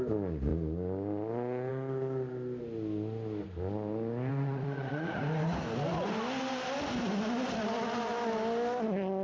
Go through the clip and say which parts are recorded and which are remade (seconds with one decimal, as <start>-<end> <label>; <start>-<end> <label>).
0.0-4.3 recorded; 4.3-5.2 remade; 5.2-9.2 recorded